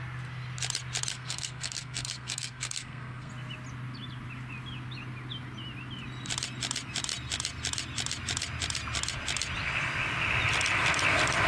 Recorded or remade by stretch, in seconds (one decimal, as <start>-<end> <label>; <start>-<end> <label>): 0.0-1.1 recorded; 1.1-3.3 remade; 3.3-11.5 recorded